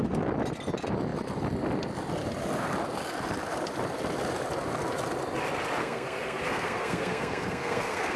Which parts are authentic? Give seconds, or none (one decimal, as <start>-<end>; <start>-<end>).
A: 0.0-5.8

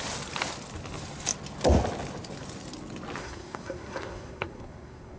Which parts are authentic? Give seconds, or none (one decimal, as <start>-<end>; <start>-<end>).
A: 0.0-3.2

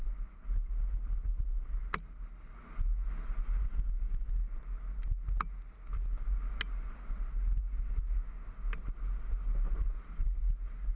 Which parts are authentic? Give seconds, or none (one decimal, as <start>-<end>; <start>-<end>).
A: 0.0-11.0

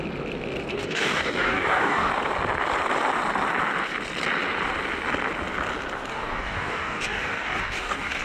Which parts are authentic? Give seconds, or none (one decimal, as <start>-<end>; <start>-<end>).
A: 0.0-0.7; 2.1-6.1